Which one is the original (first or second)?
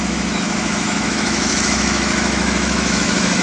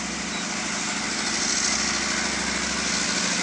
second